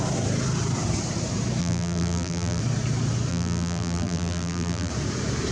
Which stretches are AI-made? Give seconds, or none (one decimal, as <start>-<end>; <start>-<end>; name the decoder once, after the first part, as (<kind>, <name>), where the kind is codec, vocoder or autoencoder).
1.6-2.6 (vocoder, BigVGAN v2); 3.3-4.9